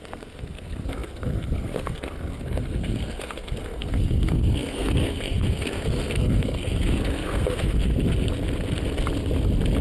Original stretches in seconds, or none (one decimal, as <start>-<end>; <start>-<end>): 7.9-9.8